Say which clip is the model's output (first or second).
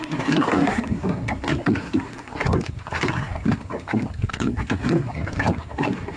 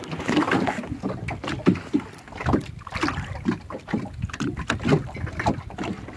first